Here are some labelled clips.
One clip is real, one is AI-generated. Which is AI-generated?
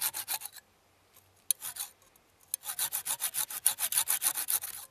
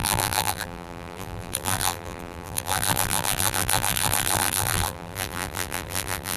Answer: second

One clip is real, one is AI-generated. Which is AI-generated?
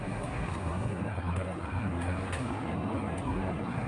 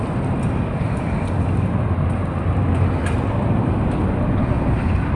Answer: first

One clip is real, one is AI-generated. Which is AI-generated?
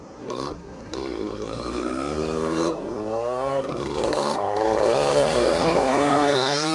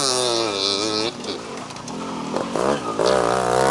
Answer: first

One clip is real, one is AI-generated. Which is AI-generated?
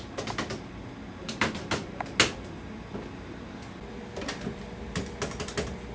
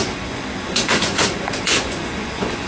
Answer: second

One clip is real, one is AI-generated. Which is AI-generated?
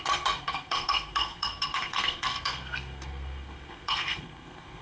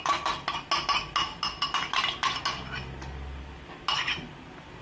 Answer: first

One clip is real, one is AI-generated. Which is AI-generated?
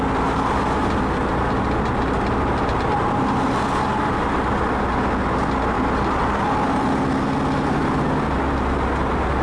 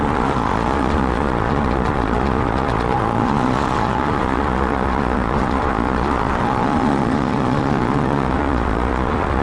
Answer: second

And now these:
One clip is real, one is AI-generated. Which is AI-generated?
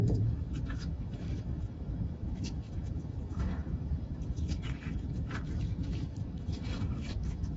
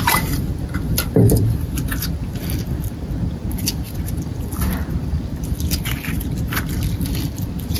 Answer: first